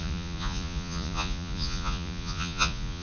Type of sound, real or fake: fake